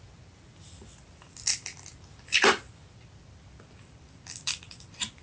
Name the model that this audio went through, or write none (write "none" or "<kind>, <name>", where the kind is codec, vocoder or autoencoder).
vocoder, BigVGAN v2